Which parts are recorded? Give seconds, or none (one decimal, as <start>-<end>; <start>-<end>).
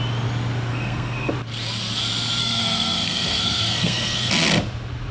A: 0.0-0.7; 1.3-2.4; 4.3-5.1